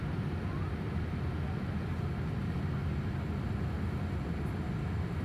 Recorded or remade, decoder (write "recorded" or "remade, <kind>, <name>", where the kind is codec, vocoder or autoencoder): recorded